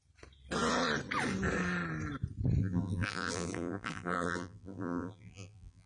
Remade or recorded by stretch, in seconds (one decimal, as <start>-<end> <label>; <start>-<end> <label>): 0.0-2.6 recorded; 2.6-5.9 remade